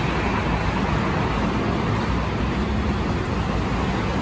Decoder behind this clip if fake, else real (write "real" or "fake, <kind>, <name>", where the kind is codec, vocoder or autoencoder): real